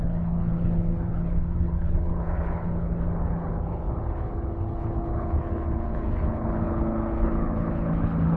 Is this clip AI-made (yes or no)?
yes